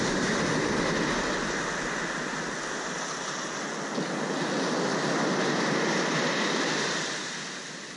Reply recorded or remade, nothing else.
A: recorded